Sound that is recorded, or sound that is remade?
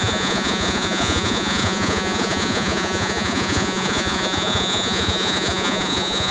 remade